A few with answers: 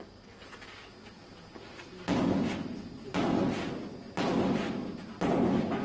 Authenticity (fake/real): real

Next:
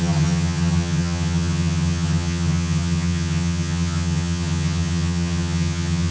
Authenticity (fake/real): fake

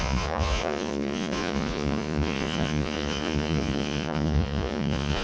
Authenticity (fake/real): fake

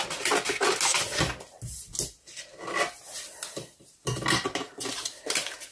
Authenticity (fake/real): real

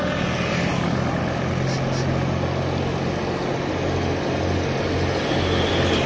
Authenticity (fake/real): real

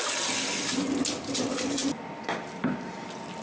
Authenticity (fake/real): real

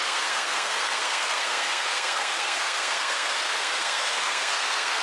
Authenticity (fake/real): fake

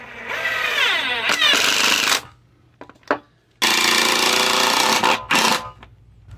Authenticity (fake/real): real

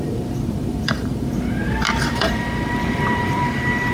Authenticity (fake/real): fake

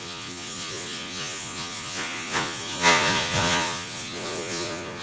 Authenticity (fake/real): fake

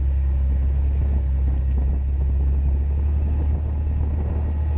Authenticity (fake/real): real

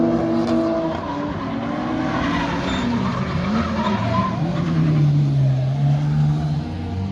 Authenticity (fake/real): real